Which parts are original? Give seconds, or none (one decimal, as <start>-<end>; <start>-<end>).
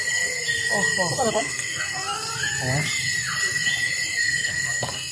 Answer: 0.0-1.3; 2.3-4.2